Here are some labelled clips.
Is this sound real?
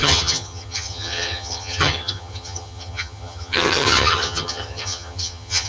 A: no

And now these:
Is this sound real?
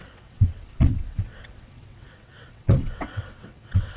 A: no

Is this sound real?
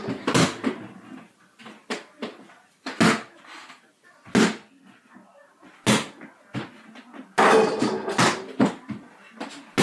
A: yes